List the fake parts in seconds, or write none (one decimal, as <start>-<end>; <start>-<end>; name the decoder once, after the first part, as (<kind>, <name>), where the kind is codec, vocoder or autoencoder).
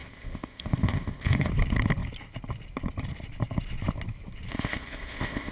0.0-1.5 (codec, ZipCodec); 4.5-5.5